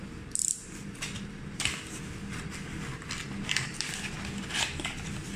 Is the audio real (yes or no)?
yes